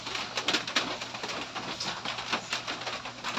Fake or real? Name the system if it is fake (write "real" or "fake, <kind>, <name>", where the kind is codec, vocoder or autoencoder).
real